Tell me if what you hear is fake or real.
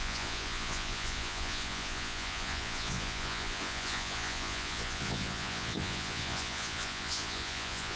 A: fake